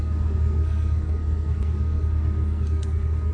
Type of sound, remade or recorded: remade